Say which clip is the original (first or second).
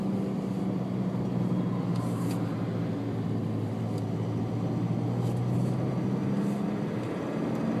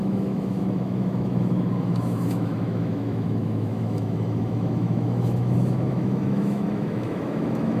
first